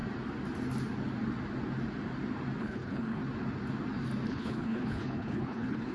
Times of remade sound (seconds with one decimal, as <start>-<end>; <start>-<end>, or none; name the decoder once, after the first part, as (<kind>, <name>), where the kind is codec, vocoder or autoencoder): 2.6-3.2 (codec, HILCodec); 4.3-5.9